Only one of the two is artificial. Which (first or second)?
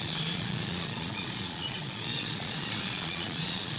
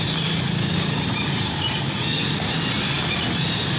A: first